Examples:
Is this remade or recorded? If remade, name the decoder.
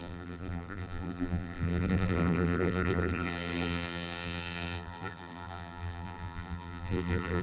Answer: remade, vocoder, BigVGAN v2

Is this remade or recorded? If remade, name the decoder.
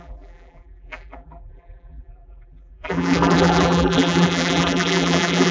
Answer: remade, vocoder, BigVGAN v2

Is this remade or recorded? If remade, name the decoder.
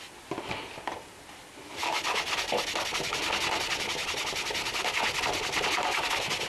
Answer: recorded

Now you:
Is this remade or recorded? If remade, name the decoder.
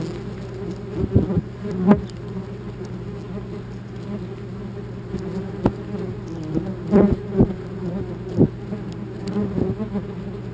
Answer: recorded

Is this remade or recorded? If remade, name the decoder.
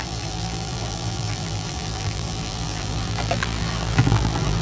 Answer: remade, vocoder, BigVGAN v2